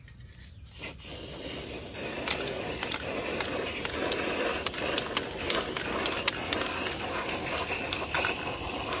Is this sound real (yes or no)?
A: yes